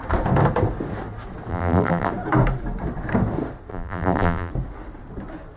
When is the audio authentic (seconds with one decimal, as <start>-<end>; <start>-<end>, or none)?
0.0-1.5; 2.1-3.7; 4.5-5.6